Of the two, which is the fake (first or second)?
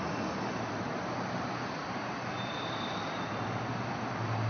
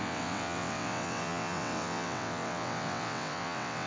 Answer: second